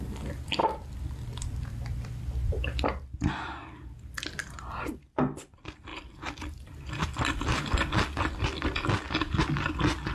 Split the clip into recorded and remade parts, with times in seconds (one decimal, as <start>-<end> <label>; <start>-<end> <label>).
0.0-0.6 recorded; 0.6-4.8 remade; 4.8-5.9 recorded; 5.9-7.9 remade; 7.9-10.1 recorded